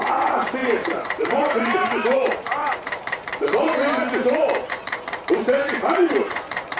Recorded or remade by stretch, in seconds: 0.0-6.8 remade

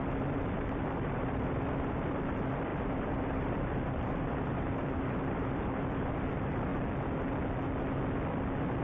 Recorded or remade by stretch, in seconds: 0.0-6.7 remade; 6.7-8.8 recorded

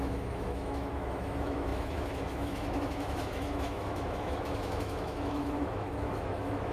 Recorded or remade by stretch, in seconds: 0.0-6.7 remade

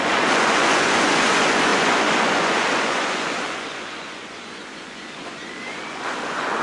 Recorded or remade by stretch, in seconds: 0.0-6.6 remade

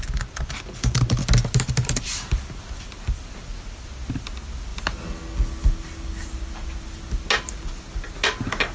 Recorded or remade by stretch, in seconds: 0.0-8.7 recorded

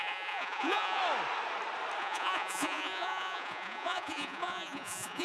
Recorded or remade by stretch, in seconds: 0.0-1.0 remade; 1.0-2.0 recorded; 2.0-5.2 remade

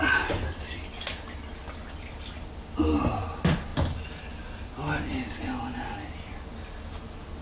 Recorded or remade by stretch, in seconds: 0.0-7.4 recorded